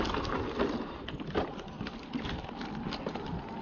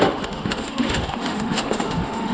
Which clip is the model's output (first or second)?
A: second